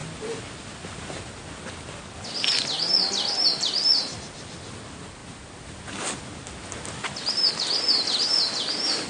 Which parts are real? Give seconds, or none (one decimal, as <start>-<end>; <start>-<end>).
0.0-9.1